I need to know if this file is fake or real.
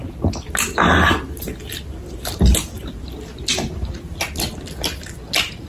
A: real